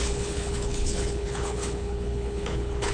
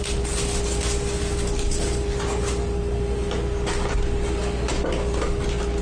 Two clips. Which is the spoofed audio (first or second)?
first